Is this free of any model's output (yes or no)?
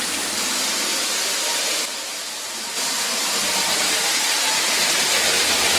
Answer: no